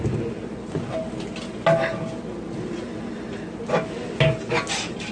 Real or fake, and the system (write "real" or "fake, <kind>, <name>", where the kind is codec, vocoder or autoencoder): real